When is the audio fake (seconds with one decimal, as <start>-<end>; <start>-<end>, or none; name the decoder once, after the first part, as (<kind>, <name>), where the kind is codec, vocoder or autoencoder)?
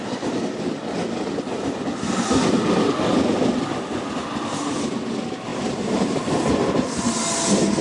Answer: 5.5-6.3 (vocoder, BigVGAN v2)